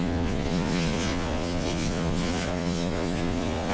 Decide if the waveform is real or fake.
fake